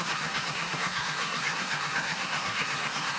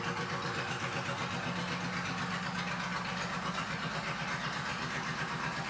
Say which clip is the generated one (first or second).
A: first